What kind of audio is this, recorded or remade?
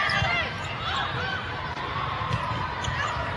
recorded